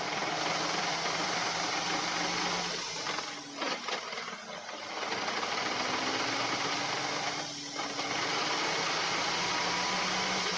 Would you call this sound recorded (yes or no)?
yes